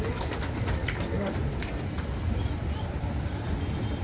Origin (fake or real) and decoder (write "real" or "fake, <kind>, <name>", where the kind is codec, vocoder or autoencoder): fake, vocoder, BigVGAN v2